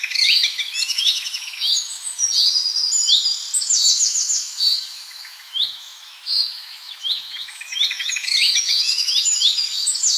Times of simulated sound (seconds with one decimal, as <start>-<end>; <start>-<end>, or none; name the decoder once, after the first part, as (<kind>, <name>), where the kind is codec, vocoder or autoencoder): 0.0-2.2 (autoencoder, DAC-VAE); 3.6-10.2